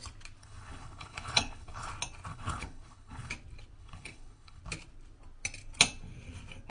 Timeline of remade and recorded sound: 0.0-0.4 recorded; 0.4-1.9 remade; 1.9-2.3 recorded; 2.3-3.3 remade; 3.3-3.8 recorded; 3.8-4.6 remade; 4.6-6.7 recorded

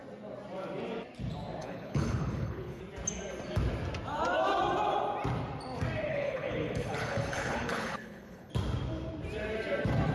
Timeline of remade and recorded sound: 0.0-1.6 recorded; 1.6-2.8 remade; 2.8-6.1 recorded; 6.1-8.5 remade; 8.5-10.1 recorded

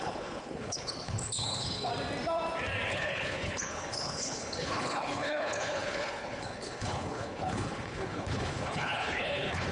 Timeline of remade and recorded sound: 0.0-1.9 remade; 1.9-2.9 recorded; 2.9-9.7 remade

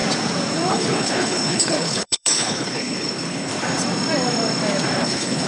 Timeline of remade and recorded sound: 0.0-0.7 recorded; 0.7-3.5 remade; 3.5-5.0 recorded; 5.0-5.5 remade

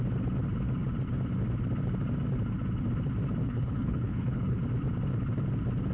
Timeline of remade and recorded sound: 0.0-3.4 recorded; 3.4-4.6 remade; 4.6-5.9 recorded

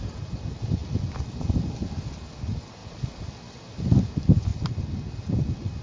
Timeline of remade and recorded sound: 0.0-5.8 recorded